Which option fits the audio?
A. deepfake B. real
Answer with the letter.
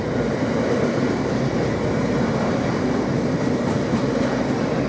B